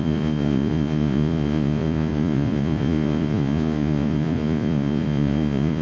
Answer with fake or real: fake